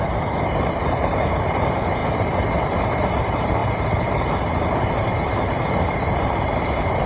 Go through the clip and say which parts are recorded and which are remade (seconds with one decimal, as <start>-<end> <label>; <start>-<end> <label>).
0.0-2.0 remade; 2.0-3.2 recorded; 3.2-7.1 remade